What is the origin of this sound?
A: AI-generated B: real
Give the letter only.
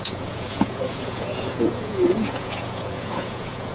A